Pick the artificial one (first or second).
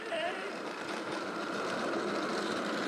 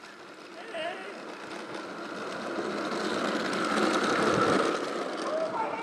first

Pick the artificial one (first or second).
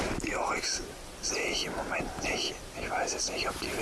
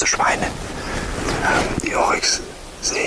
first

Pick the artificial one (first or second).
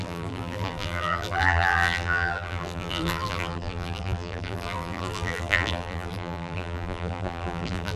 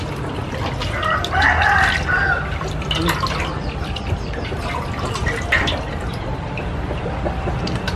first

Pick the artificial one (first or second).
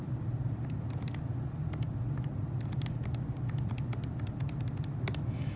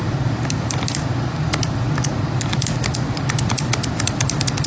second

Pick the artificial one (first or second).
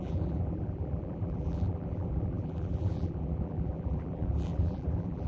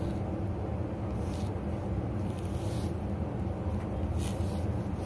first